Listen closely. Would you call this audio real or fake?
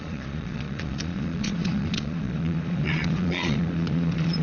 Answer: fake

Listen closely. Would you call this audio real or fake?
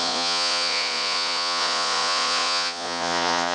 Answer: fake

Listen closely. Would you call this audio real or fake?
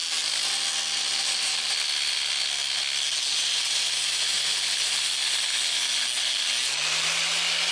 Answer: real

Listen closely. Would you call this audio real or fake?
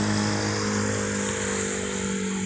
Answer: real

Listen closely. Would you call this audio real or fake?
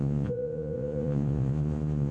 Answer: fake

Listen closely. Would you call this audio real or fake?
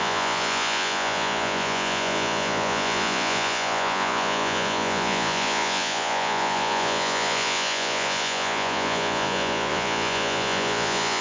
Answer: fake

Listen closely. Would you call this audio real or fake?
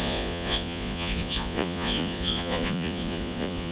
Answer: fake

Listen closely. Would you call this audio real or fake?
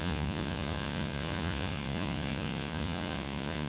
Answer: fake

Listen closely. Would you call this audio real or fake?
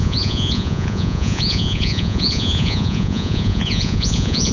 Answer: fake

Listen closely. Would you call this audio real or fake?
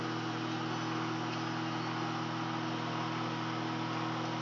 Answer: real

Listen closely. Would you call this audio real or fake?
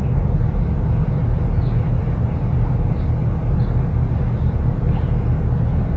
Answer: real